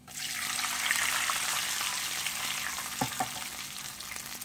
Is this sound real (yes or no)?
yes